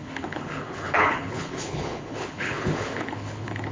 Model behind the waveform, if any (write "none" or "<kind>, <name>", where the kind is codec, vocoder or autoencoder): codec, HILCodec